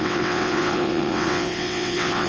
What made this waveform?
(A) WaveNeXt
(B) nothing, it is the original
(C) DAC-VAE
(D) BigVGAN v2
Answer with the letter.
A